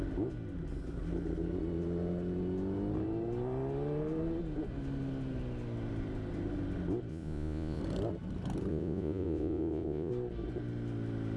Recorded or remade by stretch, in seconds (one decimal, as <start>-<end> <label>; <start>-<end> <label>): 0.0-7.1 recorded; 7.1-7.8 remade; 7.8-8.7 recorded; 8.7-10.1 remade; 10.1-11.4 recorded